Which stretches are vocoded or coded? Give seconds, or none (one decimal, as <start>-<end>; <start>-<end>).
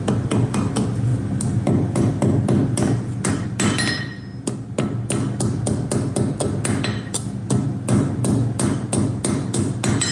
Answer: none